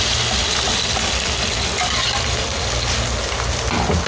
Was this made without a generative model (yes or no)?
yes